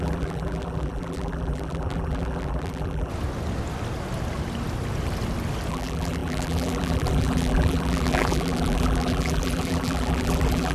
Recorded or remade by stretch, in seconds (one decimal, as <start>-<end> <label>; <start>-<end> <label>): 0.0-3.1 remade; 3.1-5.7 recorded; 5.7-10.7 remade